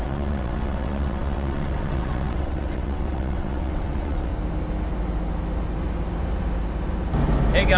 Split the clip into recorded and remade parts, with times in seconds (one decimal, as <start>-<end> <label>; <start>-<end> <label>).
0.0-4.3 remade; 4.3-7.8 recorded